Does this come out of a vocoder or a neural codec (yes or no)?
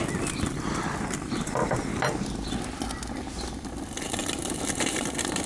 no